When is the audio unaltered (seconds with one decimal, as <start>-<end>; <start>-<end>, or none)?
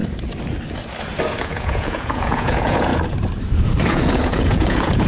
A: 0.0-1.4; 2.9-3.9